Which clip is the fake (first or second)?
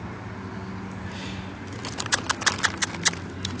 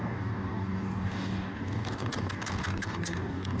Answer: second